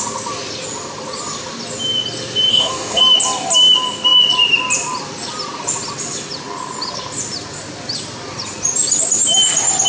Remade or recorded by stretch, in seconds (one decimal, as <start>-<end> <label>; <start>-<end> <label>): 0.0-2.5 recorded; 2.5-3.0 remade; 3.0-9.9 recorded